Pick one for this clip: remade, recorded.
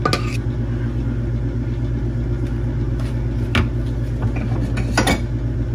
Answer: recorded